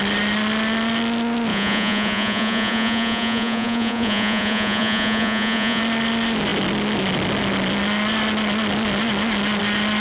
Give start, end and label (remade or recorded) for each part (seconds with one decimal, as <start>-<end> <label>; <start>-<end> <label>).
0.0-1.5 recorded; 1.5-5.8 remade; 5.8-10.0 recorded